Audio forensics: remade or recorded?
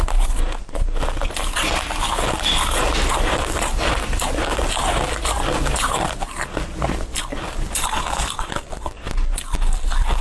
recorded